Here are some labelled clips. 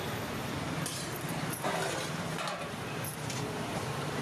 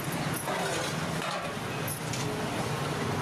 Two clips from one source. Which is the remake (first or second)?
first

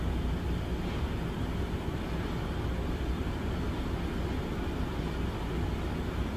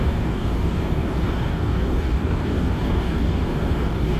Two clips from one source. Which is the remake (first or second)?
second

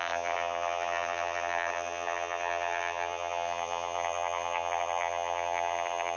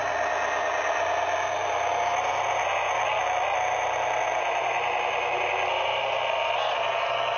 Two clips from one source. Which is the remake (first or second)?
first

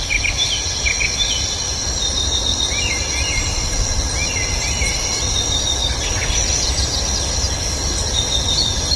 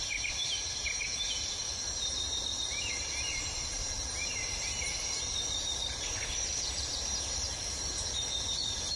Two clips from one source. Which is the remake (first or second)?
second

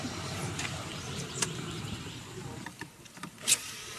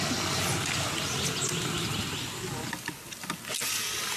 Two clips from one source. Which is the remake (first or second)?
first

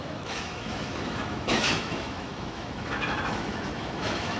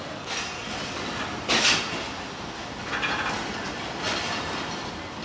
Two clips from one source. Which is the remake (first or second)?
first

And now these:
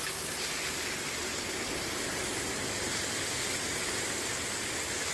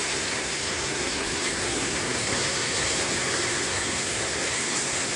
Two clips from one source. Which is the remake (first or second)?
second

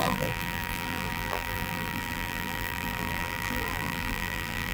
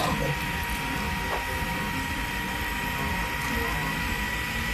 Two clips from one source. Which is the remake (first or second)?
first